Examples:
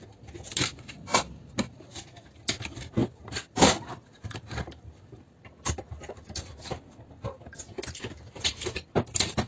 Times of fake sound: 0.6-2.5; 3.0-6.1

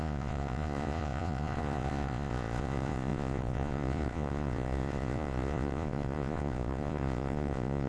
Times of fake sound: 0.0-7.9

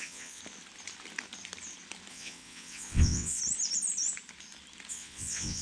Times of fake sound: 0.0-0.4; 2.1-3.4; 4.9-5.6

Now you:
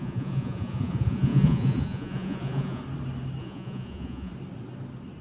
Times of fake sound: 0.0-2.8; 3.4-4.3

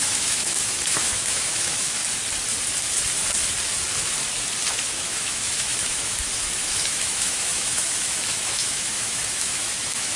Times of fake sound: 0.0-2.0; 4.7-10.2

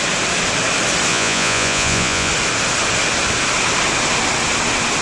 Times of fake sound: 1.1-2.3

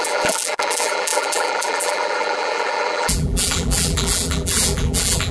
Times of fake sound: 0.0-5.3

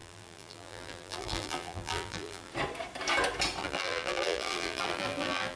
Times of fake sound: 0.0-2.5; 3.6-5.6